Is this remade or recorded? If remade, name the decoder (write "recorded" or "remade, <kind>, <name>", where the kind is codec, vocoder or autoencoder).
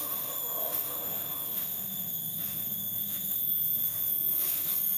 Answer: remade, autoencoder, DAC-VAE